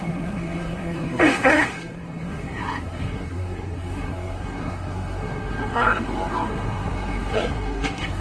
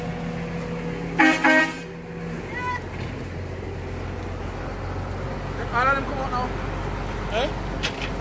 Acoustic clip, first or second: second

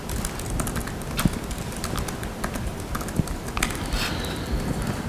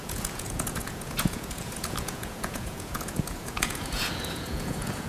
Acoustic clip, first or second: first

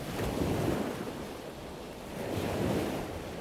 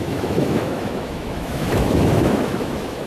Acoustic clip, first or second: first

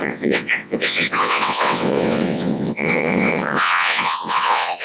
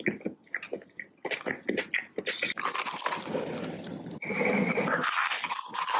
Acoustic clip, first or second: second